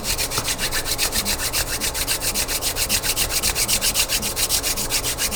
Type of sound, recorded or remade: recorded